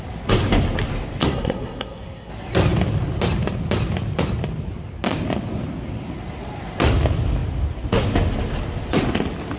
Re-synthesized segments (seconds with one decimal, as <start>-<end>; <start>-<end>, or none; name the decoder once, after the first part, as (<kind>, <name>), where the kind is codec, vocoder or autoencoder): 1.2-2.3 (codec, SNAC)